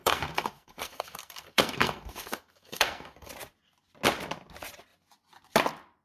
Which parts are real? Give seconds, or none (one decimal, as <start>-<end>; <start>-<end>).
3.3-6.0